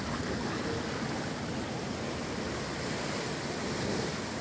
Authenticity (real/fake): real